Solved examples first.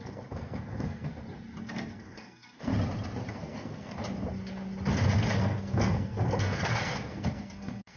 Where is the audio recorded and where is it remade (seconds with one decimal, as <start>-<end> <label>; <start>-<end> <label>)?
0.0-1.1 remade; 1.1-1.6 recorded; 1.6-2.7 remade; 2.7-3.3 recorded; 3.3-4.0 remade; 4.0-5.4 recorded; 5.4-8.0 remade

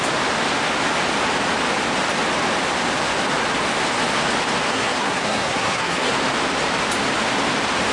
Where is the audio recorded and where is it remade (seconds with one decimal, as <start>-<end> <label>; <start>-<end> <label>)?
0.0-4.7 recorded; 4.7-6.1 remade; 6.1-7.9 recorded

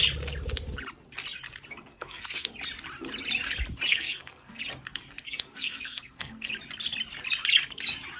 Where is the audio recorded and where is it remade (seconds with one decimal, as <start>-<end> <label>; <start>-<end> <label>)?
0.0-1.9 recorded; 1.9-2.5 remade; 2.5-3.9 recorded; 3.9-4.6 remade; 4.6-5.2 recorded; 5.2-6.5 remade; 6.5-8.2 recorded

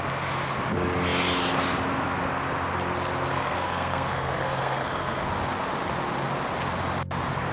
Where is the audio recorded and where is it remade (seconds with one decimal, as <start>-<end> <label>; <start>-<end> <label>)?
0.0-3.3 recorded; 3.3-5.2 remade; 5.2-7.5 recorded